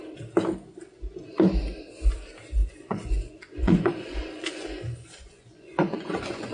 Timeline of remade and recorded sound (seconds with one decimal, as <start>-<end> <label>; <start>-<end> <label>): 0.0-2.6 recorded; 2.6-6.5 remade